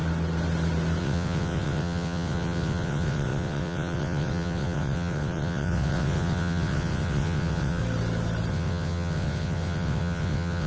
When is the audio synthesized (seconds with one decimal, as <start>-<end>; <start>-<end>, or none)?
1.0-7.8; 8.5-10.7